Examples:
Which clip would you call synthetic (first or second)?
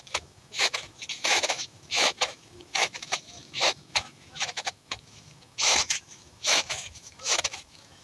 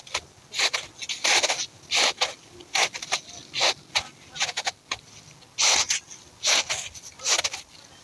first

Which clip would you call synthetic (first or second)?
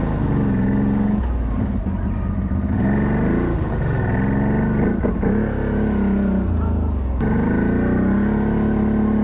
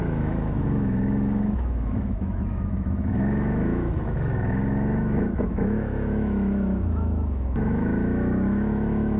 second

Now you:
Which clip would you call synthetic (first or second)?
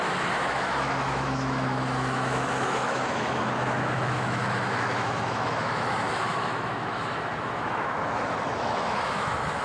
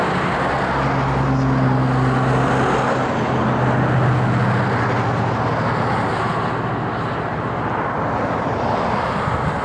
first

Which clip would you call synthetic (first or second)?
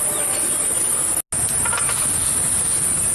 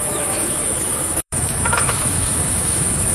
second